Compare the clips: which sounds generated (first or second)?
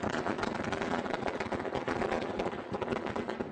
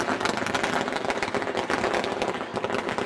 first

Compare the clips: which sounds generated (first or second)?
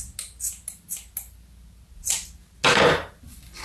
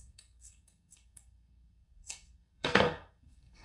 second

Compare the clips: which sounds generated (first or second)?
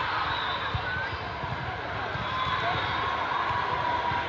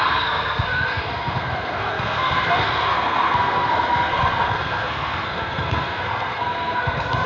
second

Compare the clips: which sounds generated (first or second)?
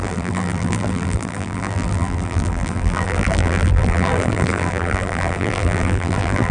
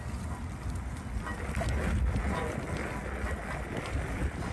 first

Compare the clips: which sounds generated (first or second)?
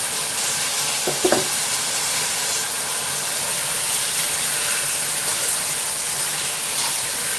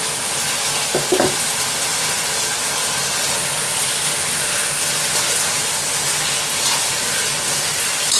first